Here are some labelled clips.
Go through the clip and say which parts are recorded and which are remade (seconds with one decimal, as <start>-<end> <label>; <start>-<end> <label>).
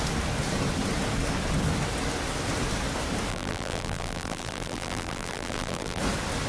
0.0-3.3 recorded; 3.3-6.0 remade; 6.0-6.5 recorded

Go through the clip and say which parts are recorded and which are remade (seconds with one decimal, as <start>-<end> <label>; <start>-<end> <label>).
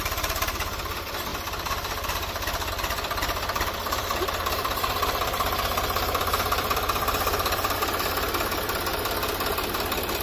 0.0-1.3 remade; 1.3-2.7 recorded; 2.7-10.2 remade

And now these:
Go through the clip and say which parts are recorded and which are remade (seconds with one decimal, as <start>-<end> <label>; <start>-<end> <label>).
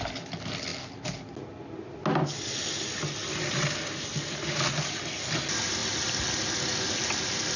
0.0-7.6 recorded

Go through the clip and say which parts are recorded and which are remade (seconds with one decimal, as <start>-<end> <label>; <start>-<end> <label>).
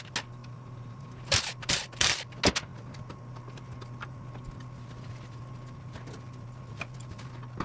0.0-0.4 recorded; 0.4-1.8 remade; 1.8-7.6 recorded